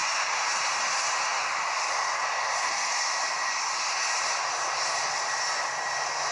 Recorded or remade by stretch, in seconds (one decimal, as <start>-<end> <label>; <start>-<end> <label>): 0.0-1.3 recorded; 1.3-2.3 remade; 2.3-6.3 recorded